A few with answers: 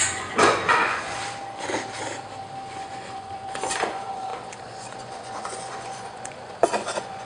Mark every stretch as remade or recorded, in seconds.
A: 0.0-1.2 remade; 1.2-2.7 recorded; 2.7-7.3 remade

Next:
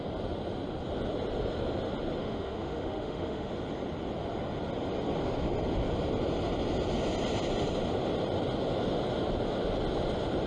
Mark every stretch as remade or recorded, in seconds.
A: 0.0-2.2 recorded; 2.2-3.5 remade; 3.5-10.5 recorded